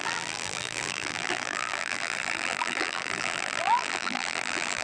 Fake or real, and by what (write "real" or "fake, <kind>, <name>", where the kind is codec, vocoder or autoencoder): fake, vocoder, BigVGAN v2